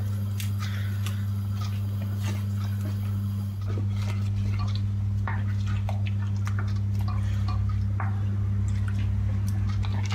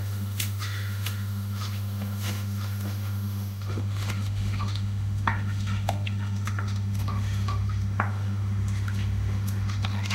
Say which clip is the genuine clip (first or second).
first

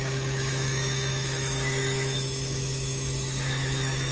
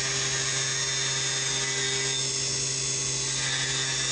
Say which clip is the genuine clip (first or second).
second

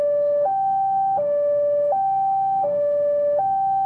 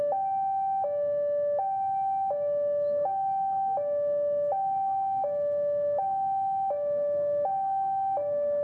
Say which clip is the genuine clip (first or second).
second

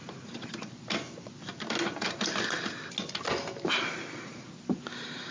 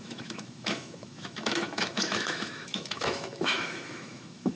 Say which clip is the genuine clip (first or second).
first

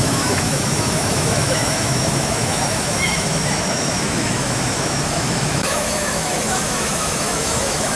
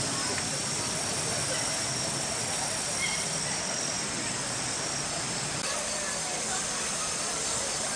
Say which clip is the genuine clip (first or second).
second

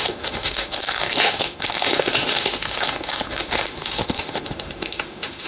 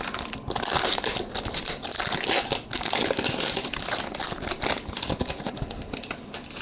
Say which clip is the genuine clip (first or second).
second